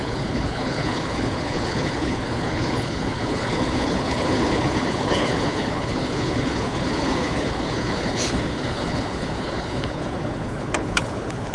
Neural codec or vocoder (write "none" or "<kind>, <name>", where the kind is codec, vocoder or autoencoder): codec, HILCodec